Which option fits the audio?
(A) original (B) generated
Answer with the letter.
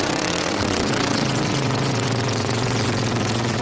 B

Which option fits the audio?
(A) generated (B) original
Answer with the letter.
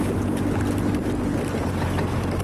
B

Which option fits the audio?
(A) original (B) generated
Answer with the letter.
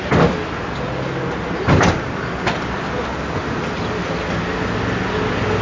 A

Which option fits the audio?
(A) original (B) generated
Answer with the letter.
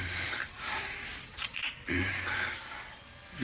B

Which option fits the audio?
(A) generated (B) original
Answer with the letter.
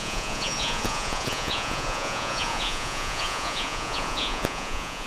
A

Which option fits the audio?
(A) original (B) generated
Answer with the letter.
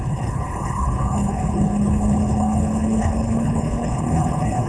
B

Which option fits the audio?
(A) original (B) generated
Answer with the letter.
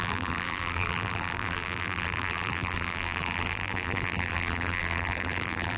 B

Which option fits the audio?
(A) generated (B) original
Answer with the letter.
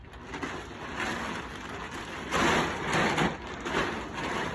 B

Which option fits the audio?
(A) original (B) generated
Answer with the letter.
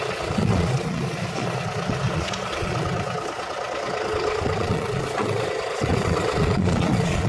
B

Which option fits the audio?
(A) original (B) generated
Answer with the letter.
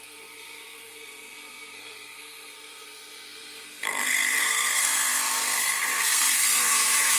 B